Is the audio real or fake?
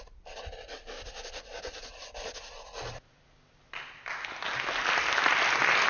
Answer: real